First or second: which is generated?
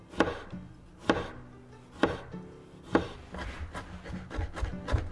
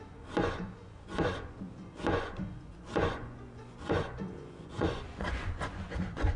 second